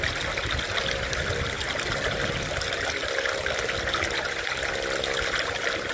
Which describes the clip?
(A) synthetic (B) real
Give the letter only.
B